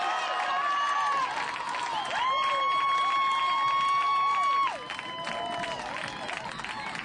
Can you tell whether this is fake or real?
real